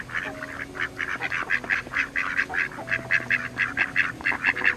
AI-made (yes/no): no